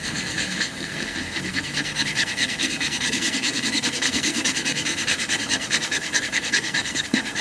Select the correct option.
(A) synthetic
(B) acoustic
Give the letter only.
A